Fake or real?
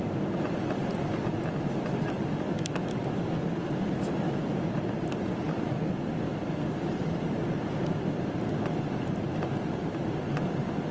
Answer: real